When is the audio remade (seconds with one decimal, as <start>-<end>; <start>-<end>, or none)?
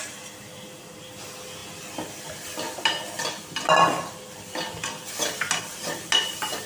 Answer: none